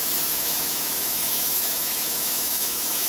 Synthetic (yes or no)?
yes